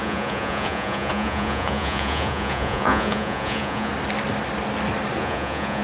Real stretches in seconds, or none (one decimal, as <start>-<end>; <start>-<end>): 3.9-5.2